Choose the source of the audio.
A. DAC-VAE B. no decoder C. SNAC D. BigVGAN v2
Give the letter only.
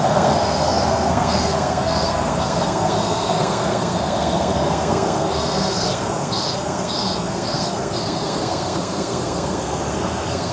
C